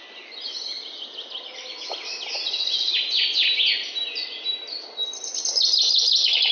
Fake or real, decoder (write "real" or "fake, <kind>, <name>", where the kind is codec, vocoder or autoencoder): real